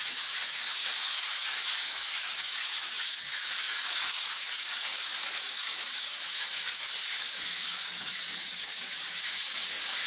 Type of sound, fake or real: fake